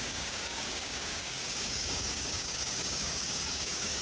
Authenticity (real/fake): fake